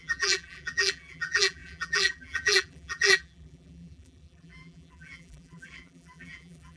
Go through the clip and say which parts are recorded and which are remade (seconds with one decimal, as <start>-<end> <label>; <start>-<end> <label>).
0.0-6.8 remade